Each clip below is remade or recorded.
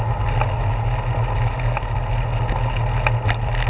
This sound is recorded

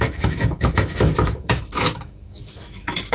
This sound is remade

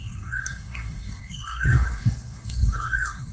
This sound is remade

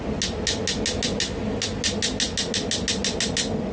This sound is recorded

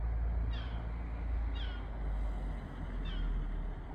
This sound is recorded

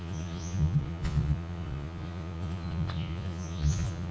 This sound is remade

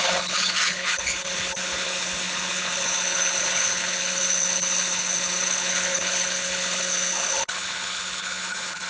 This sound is remade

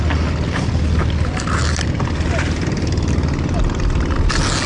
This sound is recorded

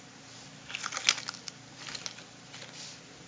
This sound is recorded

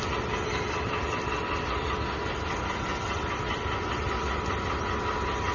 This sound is recorded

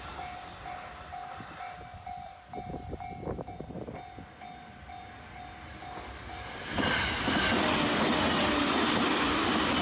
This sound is recorded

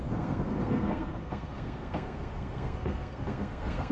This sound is remade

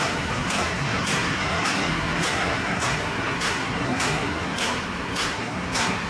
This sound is remade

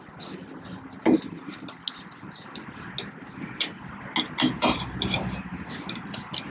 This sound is recorded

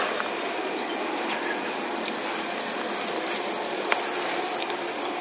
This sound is recorded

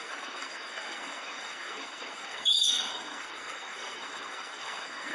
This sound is remade